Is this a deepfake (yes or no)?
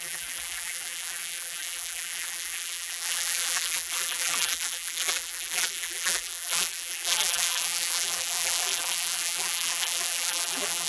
yes